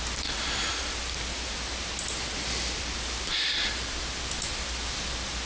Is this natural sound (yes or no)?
yes